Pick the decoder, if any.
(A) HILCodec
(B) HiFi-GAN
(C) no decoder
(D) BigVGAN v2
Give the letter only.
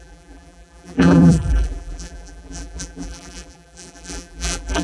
D